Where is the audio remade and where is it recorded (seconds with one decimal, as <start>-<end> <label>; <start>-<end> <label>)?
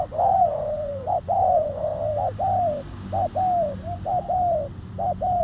0.0-1.9 remade; 1.9-5.4 recorded